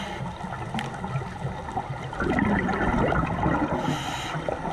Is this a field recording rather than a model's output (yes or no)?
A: yes